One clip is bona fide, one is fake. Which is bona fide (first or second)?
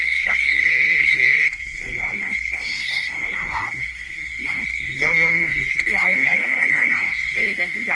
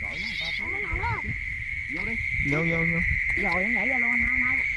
second